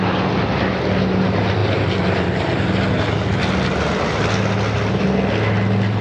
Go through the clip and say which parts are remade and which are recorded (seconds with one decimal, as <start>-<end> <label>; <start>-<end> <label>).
0.0-6.0 recorded